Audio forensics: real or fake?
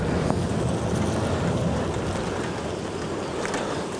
real